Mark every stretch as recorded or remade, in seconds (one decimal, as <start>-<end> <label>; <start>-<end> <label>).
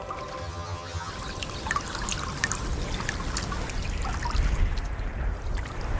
0.0-0.4 recorded; 0.4-1.1 remade; 1.1-6.0 recorded